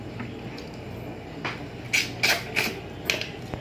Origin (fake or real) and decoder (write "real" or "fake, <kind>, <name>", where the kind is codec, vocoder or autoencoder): real